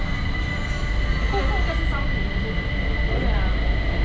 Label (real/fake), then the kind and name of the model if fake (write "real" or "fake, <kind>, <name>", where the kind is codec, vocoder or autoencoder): real